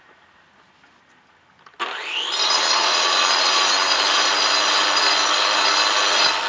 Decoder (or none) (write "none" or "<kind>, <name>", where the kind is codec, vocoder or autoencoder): none